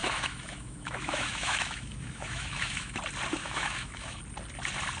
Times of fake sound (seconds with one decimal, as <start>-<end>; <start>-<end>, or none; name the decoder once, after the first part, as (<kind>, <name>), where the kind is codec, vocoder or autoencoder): 0.0-3.0 (autoencoder, DAC-VAE); 3.4-4.2